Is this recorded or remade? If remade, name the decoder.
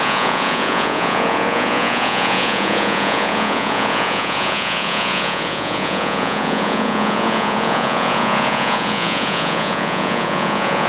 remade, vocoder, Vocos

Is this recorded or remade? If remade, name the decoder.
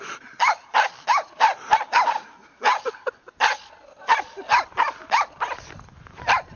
recorded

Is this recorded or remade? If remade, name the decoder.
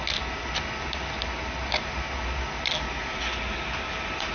recorded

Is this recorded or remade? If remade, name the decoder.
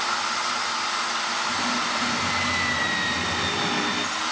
recorded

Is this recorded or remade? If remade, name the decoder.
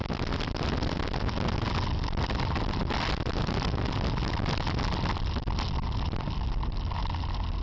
recorded